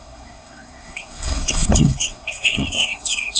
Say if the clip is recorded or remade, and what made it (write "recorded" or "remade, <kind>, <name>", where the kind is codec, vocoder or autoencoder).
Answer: remade, codec, SNAC